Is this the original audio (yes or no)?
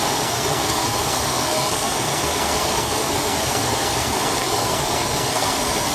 no